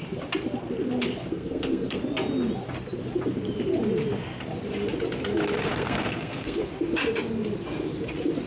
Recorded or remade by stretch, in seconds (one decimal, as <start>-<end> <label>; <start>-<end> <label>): 0.0-1.3 recorded; 1.3-2.0 remade; 2.0-5.7 recorded; 5.7-6.7 remade; 6.7-8.5 recorded